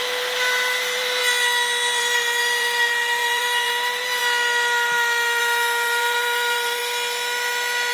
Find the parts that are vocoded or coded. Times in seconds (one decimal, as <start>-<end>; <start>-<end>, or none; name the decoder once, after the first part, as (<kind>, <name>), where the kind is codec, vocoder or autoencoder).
0.0-1.2 (vocoder, BigVGAN v2); 2.0-4.2; 5.4-6.8